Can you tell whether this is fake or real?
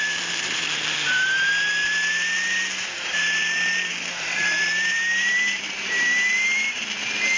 fake